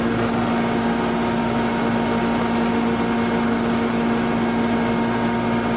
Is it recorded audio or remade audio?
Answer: recorded